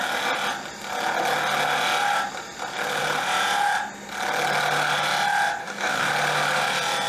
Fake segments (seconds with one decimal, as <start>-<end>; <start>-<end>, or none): 5.6-6.1